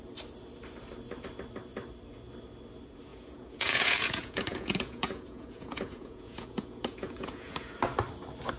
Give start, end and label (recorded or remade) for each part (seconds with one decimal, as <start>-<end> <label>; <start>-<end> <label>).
0.0-3.1 recorded; 3.1-7.7 remade; 7.7-8.6 recorded